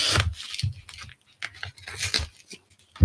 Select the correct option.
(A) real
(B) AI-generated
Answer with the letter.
A